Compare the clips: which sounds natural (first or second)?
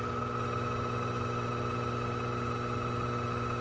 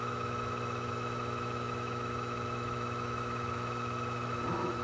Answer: first